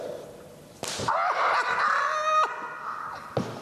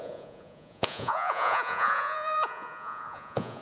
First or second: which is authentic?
first